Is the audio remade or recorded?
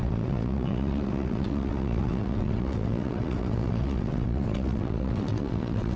remade